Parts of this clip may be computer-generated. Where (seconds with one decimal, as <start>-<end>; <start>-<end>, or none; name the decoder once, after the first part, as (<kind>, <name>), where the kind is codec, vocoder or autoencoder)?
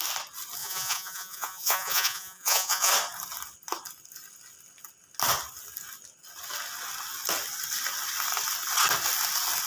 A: 0.6-2.9 (vocoder, Vocos)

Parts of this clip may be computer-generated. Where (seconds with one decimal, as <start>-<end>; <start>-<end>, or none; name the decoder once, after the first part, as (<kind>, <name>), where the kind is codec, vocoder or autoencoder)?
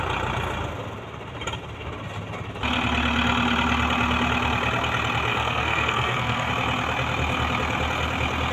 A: 5.3-6.5 (codec, SNAC)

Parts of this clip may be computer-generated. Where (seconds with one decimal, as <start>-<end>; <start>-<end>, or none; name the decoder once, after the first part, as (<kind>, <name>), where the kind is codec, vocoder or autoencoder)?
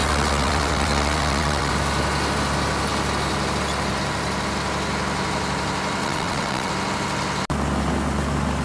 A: 0.0-1.7 (vocoder, WaveNeXt); 6.0-6.7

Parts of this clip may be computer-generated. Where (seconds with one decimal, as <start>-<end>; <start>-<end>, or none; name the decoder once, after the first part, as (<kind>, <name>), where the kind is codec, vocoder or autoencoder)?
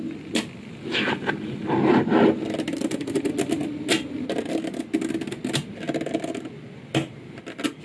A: none